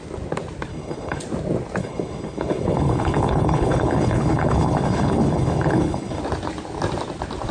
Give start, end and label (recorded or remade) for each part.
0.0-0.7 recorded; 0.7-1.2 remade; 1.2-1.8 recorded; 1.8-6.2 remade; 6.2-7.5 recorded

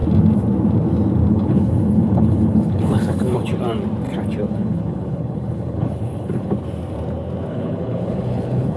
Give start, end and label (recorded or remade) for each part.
0.0-1.3 recorded; 1.3-3.5 remade; 3.5-4.5 recorded; 4.5-6.5 remade; 6.5-7.5 recorded; 7.5-8.8 remade

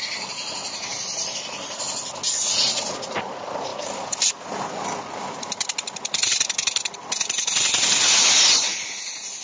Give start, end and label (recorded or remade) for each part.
0.0-9.4 recorded

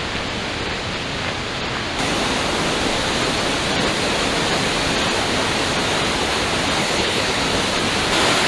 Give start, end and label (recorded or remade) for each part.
0.0-6.8 recorded; 6.8-7.4 remade; 7.4-8.5 recorded

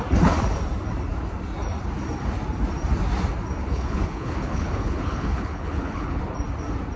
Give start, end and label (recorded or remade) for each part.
0.0-3.6 recorded; 3.6-6.2 remade; 6.2-7.0 recorded

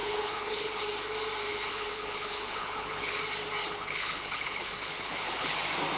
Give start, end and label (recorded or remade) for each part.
0.0-0.8 remade; 0.8-1.5 recorded; 1.5-3.2 remade; 3.2-3.6 recorded; 3.6-5.6 remade; 5.6-6.0 recorded

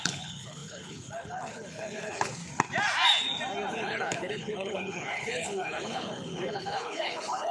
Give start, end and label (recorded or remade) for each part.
0.0-2.4 remade; 2.4-3.7 recorded; 3.7-7.5 remade

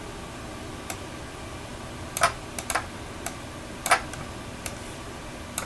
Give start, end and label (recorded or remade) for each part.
0.0-5.7 recorded